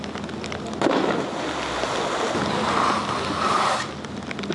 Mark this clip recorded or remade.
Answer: recorded